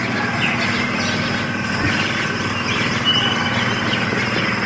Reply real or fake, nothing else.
real